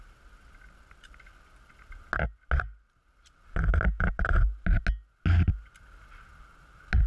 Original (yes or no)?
yes